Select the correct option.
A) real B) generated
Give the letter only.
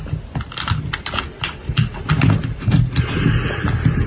A